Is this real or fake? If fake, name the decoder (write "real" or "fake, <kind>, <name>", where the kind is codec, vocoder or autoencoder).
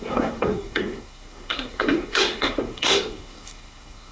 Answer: fake, codec, SNAC